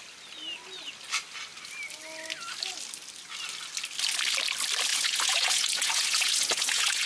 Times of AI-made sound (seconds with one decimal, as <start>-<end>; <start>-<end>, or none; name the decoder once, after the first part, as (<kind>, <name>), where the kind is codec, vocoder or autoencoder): 4.9-7.1 (vocoder, Vocos)